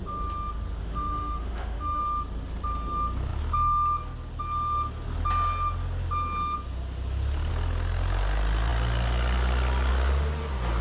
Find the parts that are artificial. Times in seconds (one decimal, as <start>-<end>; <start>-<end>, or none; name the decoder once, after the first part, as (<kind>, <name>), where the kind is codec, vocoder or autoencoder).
0.8-2.0 (autoencoder, DAC-VAE)